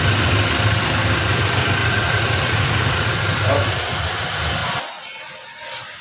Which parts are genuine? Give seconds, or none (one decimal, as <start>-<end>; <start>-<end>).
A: 0.0-1.8; 3.1-6.0